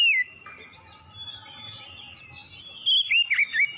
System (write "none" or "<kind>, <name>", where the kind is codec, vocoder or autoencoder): none